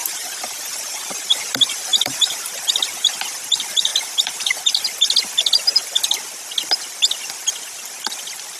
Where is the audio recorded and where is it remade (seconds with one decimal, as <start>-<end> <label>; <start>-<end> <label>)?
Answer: 0.0-1.5 remade; 1.5-1.9 recorded; 1.9-2.5 remade; 2.5-3.9 recorded; 3.9-5.0 remade; 5.0-8.6 recorded